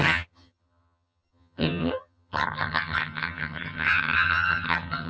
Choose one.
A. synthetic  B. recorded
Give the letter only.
A